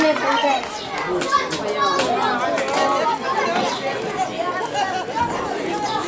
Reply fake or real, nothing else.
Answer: real